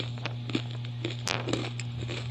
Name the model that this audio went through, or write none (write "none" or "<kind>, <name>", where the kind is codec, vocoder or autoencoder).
none